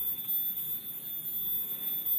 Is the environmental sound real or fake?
real